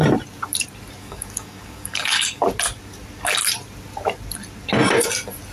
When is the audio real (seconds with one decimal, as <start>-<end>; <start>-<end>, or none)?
0.0-1.0; 2.4-5.5